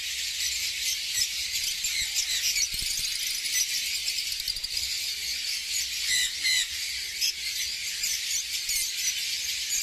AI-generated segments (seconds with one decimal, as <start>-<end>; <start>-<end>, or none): none